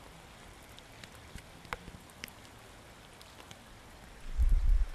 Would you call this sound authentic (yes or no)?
yes